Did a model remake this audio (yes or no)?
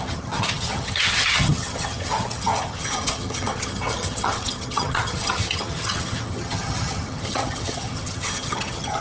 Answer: yes